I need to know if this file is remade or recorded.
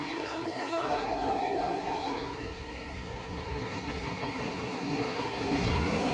remade